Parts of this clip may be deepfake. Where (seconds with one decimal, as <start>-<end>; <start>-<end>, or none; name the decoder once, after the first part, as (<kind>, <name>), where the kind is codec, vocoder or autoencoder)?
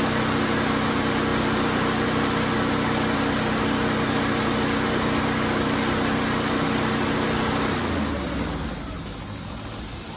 none